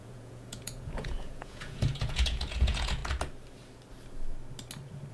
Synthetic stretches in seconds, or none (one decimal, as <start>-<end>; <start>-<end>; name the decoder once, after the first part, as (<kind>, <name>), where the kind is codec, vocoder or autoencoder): 0.0-3.0 (vocoder, Vocos)